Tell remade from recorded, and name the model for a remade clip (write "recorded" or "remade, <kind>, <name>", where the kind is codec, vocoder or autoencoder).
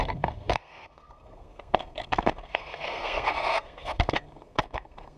remade, codec, SNAC